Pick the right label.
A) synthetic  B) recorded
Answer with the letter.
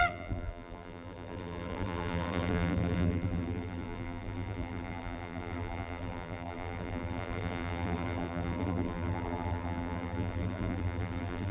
A